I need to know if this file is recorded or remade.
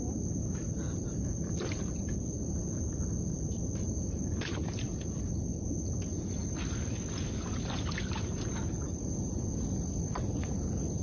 recorded